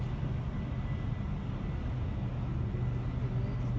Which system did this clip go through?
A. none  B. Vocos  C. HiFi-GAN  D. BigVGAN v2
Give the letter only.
A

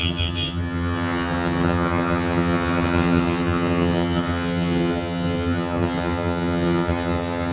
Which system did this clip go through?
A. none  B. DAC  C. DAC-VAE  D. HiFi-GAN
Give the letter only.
D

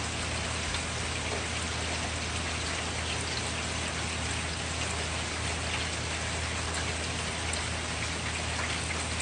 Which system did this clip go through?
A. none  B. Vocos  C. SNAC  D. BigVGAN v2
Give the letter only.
A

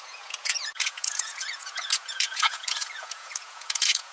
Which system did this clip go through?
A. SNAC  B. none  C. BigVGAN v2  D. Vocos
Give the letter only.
D